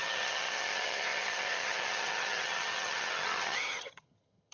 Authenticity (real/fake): fake